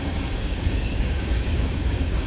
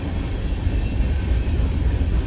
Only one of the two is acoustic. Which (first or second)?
second